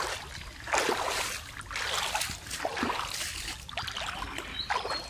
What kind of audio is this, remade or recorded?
recorded